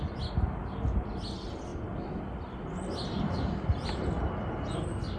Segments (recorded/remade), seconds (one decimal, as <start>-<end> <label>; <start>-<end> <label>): 0.0-5.2 recorded